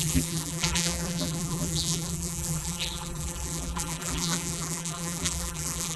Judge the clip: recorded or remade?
remade